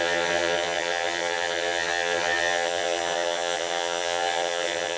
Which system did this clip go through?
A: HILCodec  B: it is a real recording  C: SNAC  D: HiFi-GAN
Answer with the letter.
D